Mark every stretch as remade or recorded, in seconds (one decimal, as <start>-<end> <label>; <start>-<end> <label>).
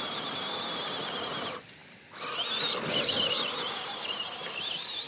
0.0-5.1 recorded